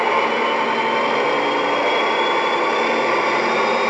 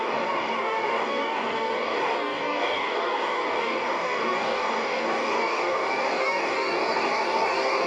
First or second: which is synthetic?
second